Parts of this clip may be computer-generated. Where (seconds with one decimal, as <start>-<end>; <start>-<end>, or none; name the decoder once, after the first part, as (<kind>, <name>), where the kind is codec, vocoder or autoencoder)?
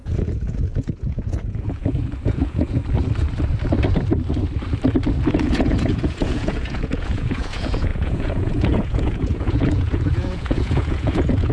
0.0-2.8 (vocoder, Vocos); 5.3-11.5